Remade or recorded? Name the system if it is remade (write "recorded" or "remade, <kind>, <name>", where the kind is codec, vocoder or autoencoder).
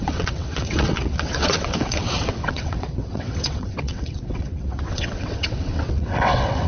remade, vocoder, WaveNeXt